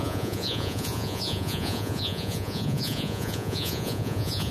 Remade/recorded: remade